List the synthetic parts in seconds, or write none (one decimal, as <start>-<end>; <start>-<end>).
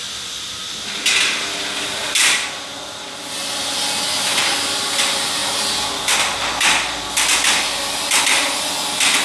none